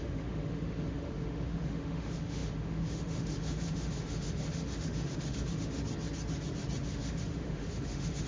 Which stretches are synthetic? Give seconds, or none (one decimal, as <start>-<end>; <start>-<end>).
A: 0.0-5.8; 6.9-8.3